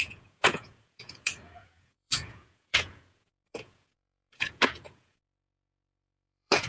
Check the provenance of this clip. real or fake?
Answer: fake